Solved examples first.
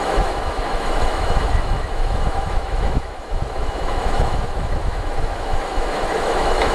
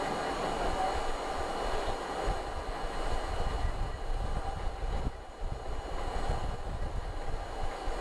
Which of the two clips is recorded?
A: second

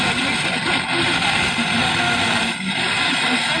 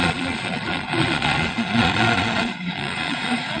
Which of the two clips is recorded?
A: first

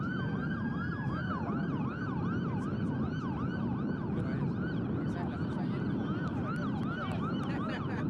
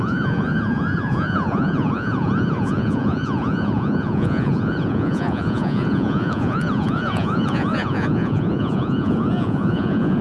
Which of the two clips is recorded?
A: first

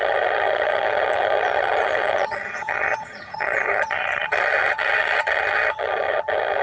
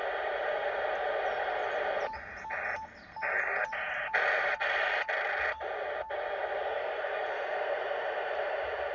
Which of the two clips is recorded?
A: second